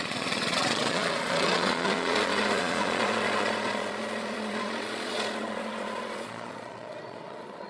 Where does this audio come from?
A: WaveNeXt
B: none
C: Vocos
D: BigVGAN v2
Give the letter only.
C